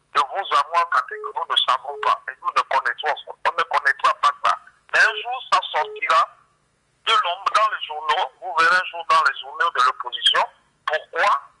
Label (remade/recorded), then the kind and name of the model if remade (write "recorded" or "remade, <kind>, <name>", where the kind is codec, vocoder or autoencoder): remade, autoencoder, DAC-VAE